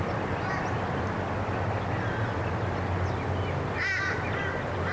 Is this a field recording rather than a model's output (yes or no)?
yes